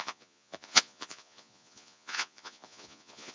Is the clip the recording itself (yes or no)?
no